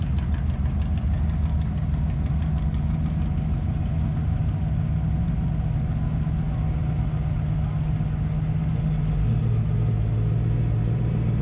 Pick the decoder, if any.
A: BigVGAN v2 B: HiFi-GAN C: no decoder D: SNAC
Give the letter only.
C